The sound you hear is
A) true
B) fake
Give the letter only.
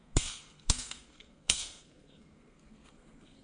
B